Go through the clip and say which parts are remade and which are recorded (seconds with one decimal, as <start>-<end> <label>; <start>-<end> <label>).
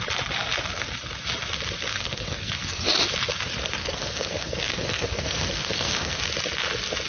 0.0-1.9 recorded; 1.9-2.9 remade; 2.9-3.8 recorded; 3.8-6.2 remade; 6.2-7.1 recorded